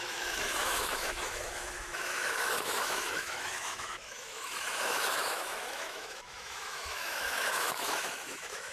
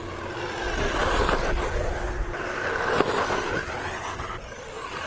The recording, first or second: second